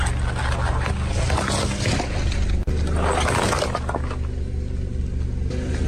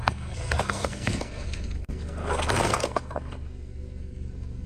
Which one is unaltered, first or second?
first